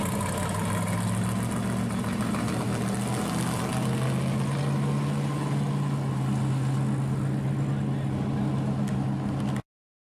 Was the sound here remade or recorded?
recorded